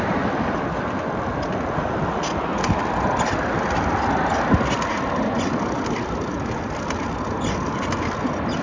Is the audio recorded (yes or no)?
yes